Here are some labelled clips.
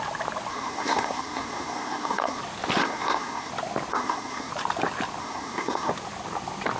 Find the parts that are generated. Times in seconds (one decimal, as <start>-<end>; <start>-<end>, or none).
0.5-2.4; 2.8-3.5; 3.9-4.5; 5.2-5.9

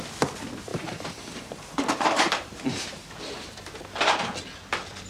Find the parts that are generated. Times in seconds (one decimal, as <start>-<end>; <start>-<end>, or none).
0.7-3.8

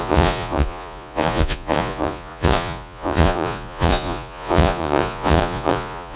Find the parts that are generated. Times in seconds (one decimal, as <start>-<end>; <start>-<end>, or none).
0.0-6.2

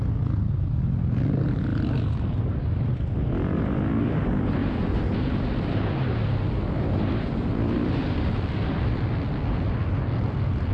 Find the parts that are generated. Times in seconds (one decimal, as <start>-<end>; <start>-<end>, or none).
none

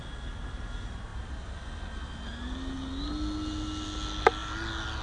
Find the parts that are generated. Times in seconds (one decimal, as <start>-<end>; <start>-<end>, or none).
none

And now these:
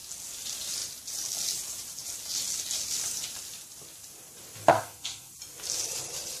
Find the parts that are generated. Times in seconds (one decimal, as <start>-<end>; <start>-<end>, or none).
4.7-5.3